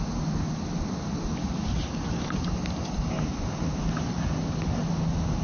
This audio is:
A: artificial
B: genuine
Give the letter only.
B